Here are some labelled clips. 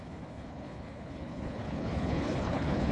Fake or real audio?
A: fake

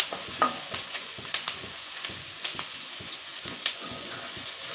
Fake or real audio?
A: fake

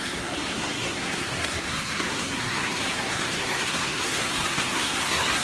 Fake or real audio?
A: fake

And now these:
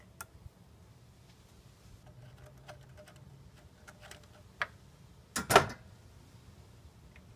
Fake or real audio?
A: real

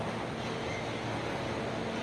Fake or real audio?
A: real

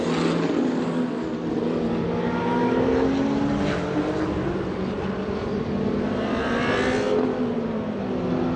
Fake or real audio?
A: real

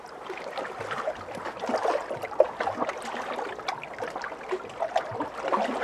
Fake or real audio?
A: real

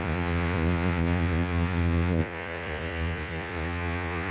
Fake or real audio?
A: fake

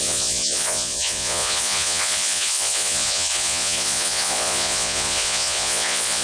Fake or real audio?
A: fake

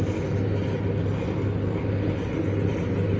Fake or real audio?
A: real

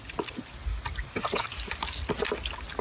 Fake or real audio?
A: real